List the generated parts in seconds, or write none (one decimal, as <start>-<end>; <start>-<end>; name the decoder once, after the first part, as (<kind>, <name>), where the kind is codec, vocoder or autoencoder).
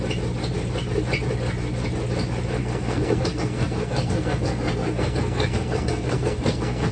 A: 2.6-6.9 (codec, SNAC)